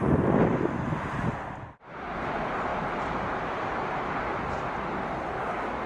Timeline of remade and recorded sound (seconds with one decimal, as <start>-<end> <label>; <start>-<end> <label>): 0.0-5.9 recorded